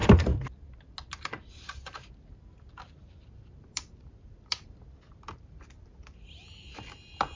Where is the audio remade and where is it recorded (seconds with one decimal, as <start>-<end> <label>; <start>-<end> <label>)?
0.0-2.7 recorded; 2.7-7.4 remade